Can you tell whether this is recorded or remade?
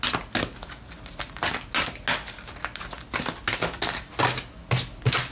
recorded